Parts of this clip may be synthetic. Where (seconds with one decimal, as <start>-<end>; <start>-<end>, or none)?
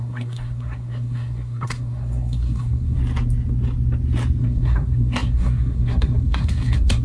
0.0-3.0; 4.4-7.0